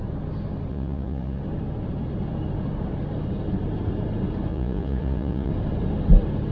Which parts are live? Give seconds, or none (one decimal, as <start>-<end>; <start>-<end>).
0.0-0.7; 1.4-4.5; 5.5-6.5